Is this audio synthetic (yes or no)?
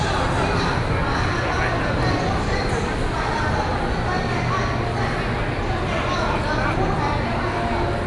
no